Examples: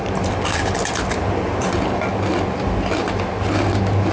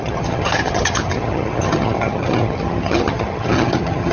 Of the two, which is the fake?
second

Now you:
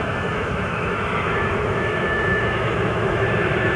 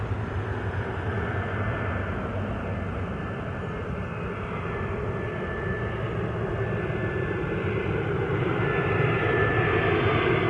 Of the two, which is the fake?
first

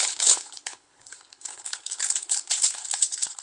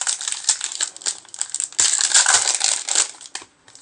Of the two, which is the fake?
first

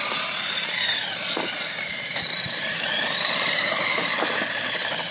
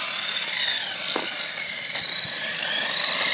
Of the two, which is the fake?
first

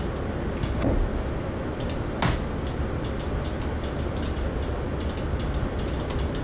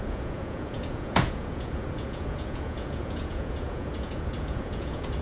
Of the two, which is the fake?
second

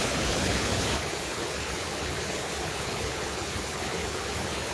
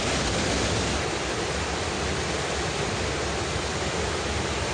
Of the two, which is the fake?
first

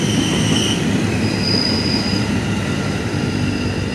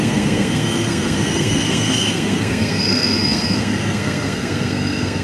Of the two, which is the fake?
second